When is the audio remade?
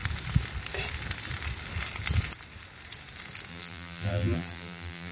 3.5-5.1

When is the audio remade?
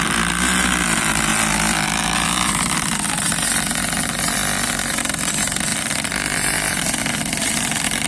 4.4-5.3; 5.7-6.8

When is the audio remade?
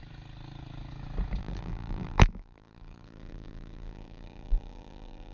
1.4-5.3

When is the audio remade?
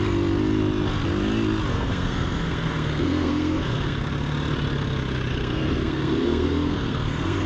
1.7-4.0; 5.3-7.5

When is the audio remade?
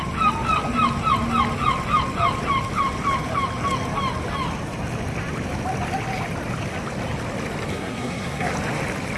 7.7-8.5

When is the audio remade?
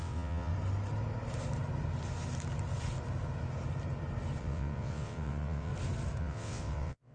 0.0-0.5; 4.4-5.7; 6.2-7.1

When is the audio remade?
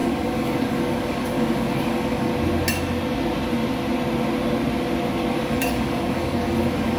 0.0-2.3; 5.3-7.0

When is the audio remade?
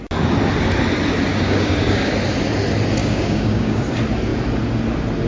1.3-2.1; 3.0-3.8